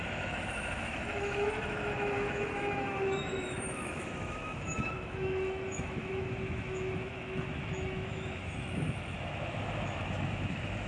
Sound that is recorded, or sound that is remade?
remade